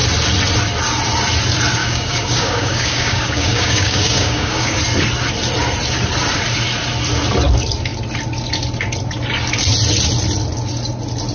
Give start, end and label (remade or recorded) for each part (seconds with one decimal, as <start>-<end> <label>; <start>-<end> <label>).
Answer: 0.0-1.8 recorded; 1.8-4.8 remade; 4.8-11.3 recorded